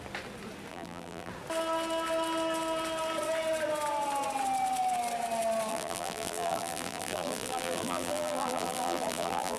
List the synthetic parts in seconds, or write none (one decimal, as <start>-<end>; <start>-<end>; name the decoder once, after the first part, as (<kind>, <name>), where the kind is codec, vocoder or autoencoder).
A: 0.7-1.3 (vocoder, BigVGAN v2); 5.7-9.6